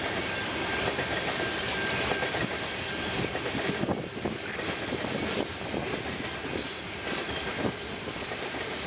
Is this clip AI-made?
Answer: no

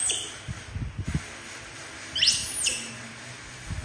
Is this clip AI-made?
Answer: no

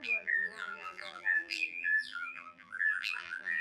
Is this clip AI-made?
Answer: yes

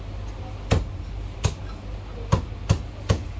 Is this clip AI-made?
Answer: no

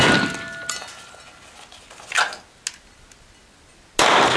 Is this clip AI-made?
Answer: no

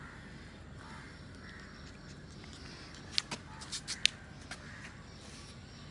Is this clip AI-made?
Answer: no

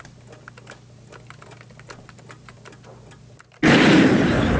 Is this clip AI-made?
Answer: no